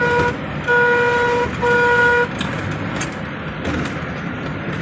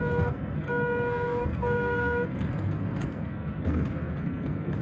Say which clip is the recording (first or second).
first